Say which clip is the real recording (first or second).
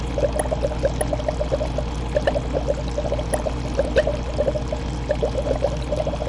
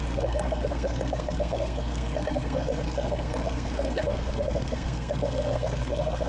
first